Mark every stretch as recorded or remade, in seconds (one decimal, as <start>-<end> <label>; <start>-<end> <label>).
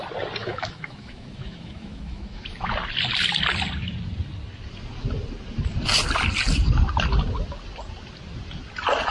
0.0-0.4 recorded; 0.4-2.7 remade; 2.7-9.1 recorded